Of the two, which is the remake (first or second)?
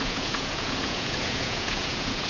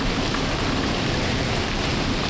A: first